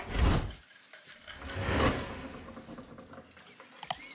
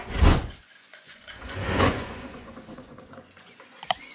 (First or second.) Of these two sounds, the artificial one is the second